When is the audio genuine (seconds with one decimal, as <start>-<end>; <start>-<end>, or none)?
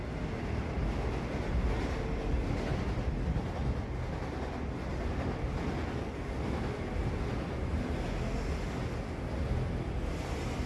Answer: 0.0-10.7